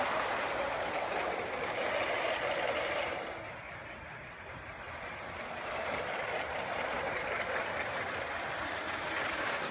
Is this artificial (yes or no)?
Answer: yes